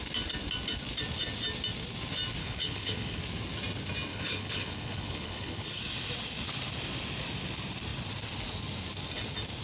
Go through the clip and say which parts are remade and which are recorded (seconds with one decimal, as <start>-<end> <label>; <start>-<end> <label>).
0.0-2.4 recorded; 2.4-3.2 remade; 3.2-4.1 recorded; 4.1-5.8 remade; 5.8-9.6 recorded